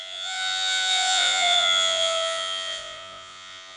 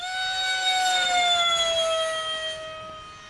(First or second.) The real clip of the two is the second